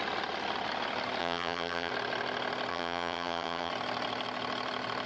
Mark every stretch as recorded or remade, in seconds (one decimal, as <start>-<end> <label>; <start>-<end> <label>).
0.0-1.2 recorded; 1.2-1.9 remade; 1.9-2.7 recorded; 2.7-3.7 remade; 3.7-5.1 recorded